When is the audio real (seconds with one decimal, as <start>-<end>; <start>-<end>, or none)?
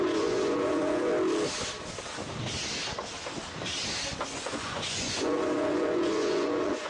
1.1-4.3